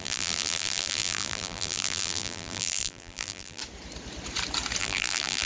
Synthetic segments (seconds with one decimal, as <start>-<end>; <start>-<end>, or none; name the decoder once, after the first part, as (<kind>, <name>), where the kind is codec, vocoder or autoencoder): 0.0-3.6 (vocoder, BigVGAN v2); 4.8-5.5